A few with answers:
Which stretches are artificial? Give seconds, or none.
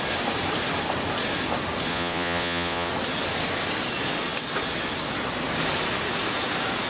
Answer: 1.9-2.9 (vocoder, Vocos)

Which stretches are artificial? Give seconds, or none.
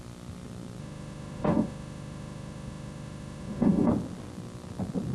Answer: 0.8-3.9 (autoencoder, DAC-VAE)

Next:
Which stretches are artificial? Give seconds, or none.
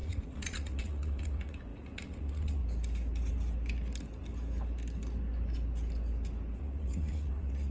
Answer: 0.0-2.6 (vocoder, Vocos); 6.6-7.7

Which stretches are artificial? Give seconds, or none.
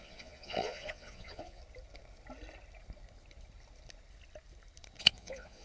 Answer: 0.0-1.6 (vocoder, Vocos); 5.0-5.6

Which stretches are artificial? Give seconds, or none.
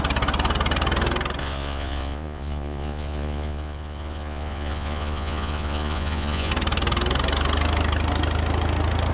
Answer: 1.4-6.5 (vocoder, Vocos)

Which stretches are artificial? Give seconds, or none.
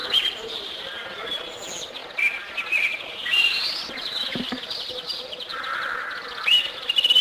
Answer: 0.0-1.5 (vocoder, BigVGAN v2); 2.0-4.6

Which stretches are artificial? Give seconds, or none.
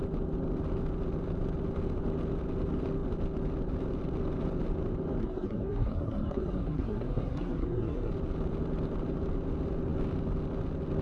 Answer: 5.2-8.1 (codec, SNAC)